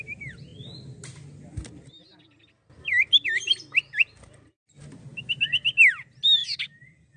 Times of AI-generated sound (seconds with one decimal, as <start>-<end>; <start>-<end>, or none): none